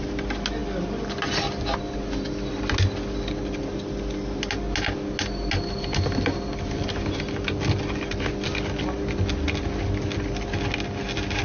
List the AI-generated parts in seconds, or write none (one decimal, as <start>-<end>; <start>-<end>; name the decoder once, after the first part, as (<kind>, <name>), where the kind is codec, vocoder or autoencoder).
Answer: none